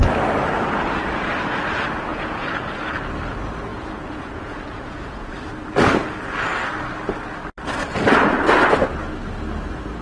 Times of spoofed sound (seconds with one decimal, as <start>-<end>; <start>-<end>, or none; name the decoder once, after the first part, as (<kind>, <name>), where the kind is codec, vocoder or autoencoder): 2.1-2.8 (vocoder, Vocos); 3.7-5.3